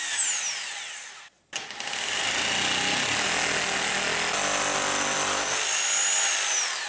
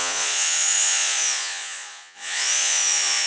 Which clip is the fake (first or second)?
second